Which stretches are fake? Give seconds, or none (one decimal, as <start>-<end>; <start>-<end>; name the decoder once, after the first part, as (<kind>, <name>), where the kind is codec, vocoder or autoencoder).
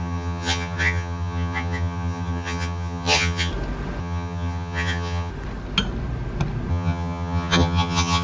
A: 0.0-3.5 (vocoder, HiFi-GAN); 4.0-5.3; 6.7-8.2